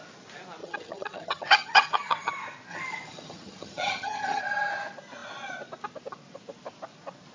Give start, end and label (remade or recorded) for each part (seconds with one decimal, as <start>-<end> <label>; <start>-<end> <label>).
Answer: 0.0-0.6 recorded; 0.6-2.3 remade; 2.3-2.7 recorded; 2.7-4.4 remade; 4.4-7.3 recorded